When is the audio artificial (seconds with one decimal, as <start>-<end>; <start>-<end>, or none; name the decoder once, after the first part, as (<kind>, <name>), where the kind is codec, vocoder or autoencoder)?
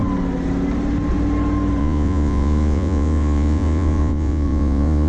1.8-5.1 (vocoder, Vocos)